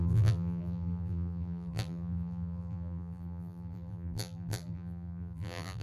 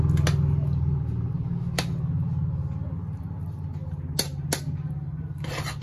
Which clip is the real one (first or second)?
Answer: second